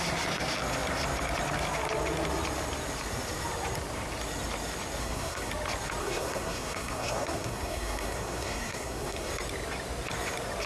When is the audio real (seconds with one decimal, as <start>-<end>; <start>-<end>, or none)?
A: 0.0-5.0; 5.5-6.0; 9.3-10.7